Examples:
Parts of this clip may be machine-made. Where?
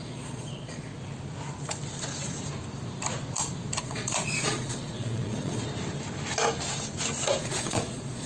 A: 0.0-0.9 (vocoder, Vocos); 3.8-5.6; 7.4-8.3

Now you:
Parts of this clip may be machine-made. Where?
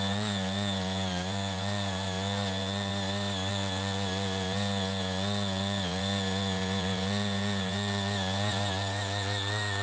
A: 0.0-2.9 (vocoder, Vocos); 3.5-9.8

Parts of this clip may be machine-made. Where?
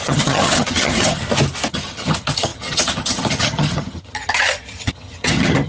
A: 0.0-1.2 (vocoder, HiFi-GAN); 1.7-5.7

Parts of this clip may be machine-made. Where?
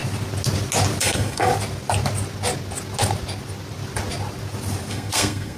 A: 1.0-1.5 (codec, SNAC); 4.9-5.6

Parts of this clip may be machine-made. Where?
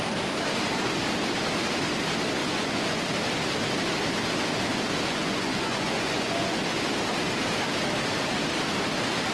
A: 2.4-3.0 (vocoder, Vocos); 5.1-6.6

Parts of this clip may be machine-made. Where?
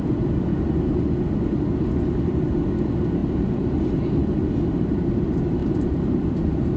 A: 3.2-3.9 (vocoder, BigVGAN v2); 5.6-6.8